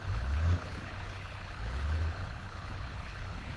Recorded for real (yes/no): no